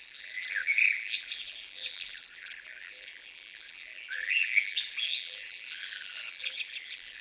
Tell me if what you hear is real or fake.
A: fake